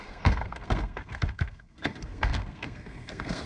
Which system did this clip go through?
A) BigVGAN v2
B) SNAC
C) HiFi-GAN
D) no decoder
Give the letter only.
B